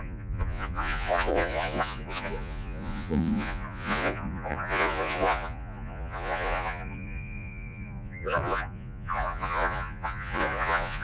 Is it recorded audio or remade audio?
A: remade